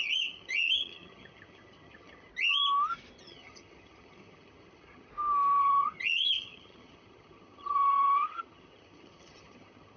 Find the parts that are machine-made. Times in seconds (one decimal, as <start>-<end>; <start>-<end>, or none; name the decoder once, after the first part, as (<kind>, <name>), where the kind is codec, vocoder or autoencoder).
0.0-2.3 (vocoder, HiFi-GAN); 3.2-5.1; 5.6-10.0